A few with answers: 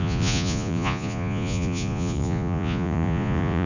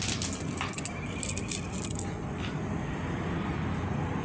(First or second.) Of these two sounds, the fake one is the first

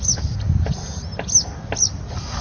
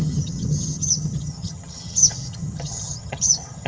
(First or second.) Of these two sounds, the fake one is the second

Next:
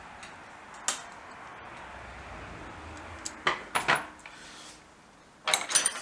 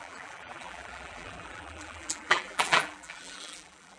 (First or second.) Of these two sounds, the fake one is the second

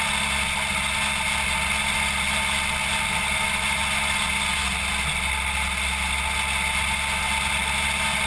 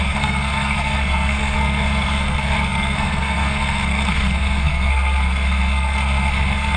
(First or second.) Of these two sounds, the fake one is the second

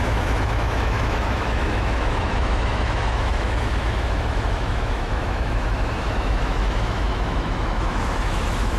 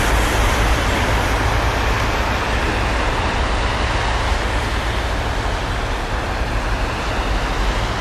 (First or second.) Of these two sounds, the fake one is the first